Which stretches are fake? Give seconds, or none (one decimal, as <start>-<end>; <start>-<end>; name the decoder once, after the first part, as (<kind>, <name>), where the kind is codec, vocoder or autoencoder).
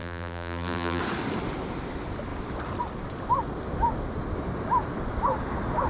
0.0-1.0 (vocoder, BigVGAN v2)